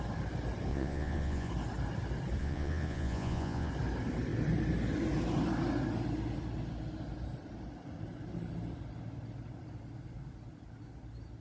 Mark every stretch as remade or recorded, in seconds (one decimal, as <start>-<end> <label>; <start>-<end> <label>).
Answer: 0.0-0.7 recorded; 0.7-1.5 remade; 1.5-2.4 recorded; 2.4-3.7 remade; 3.7-11.4 recorded